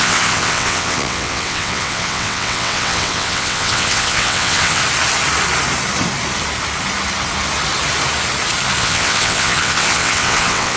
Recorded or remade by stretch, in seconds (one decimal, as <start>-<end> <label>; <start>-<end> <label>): 0.0-4.8 remade; 4.8-8.8 recorded; 8.8-10.8 remade